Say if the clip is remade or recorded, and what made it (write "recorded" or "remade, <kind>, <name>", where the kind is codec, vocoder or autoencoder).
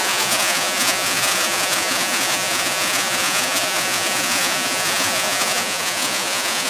remade, vocoder, Vocos